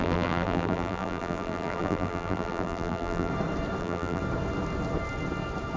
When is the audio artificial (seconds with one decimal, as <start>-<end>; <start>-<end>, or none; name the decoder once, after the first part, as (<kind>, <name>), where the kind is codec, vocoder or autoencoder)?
0.0-3.3 (vocoder, BigVGAN v2); 3.8-4.2